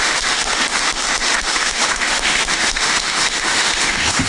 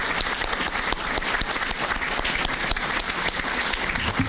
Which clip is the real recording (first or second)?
second